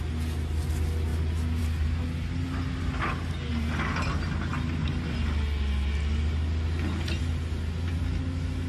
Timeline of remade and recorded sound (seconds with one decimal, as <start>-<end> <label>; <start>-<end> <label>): 0.0-8.7 recorded